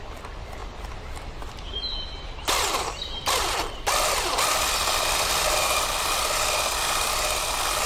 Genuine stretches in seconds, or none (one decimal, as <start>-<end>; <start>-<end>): 0.0-7.9